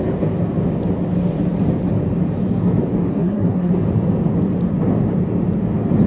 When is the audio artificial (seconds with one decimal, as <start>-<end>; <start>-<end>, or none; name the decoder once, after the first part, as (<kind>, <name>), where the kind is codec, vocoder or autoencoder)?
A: 3.1-3.7 (codec, SNAC)